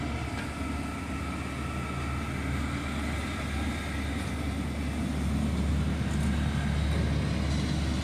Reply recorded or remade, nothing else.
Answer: recorded